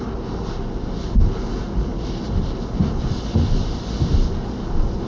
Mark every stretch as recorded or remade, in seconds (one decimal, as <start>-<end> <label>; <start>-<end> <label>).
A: 0.0-5.1 recorded